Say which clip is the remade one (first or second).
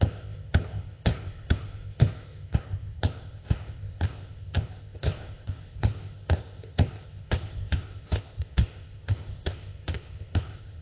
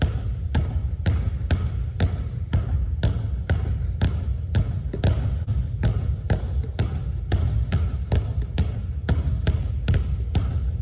first